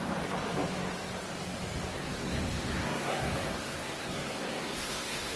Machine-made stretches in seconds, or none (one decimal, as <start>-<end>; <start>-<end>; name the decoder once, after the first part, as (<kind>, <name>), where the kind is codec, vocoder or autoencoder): 1.9-5.4 (codec, SNAC)